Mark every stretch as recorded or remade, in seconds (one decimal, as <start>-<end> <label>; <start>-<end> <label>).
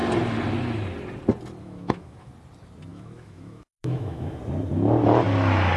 0.0-1.6 recorded; 1.6-2.3 remade; 2.3-2.9 recorded; 2.9-4.4 remade; 4.4-5.8 recorded